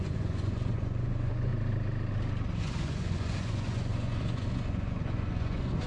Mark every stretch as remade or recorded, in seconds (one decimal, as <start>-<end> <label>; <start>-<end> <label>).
0.0-1.5 remade; 1.5-2.6 recorded; 2.6-5.9 remade